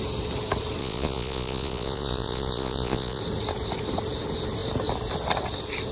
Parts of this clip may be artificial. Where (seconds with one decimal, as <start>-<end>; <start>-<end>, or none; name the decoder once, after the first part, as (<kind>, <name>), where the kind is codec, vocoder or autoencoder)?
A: 0.8-3.2 (vocoder, Vocos)

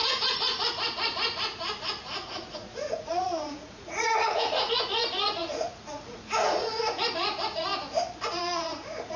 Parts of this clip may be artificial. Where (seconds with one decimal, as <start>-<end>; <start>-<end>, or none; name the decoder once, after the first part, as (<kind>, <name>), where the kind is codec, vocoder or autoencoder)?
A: 0.0-7.7 (vocoder, Vocos); 8.4-9.2

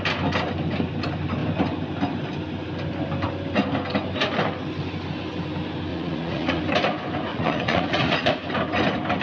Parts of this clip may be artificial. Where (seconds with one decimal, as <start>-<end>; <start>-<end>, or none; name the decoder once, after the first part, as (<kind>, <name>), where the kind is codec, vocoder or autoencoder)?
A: 5.9-6.6 (vocoder, Vocos); 7.3-8.3

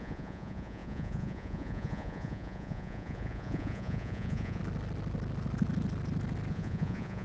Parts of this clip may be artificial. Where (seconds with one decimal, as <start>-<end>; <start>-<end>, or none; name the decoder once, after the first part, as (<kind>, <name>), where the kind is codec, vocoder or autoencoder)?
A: 0.0-4.6 (vocoder, Vocos); 6.5-7.2

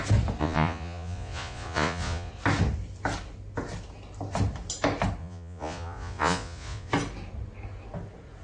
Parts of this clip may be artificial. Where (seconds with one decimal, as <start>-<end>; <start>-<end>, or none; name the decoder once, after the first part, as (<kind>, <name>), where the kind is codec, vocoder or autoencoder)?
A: 0.4-2.3 (vocoder, Vocos); 5.2-6.9

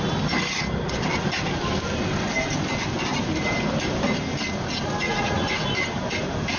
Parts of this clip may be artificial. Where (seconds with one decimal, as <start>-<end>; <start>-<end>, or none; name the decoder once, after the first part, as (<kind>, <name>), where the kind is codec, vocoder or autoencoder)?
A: 5.0-5.7 (vocoder, Vocos)